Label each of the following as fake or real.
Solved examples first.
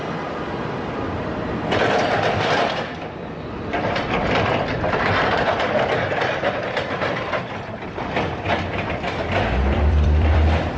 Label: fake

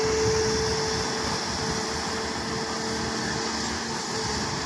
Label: real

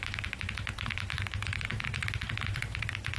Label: fake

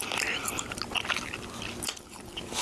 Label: real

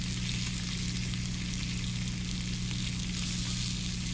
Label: real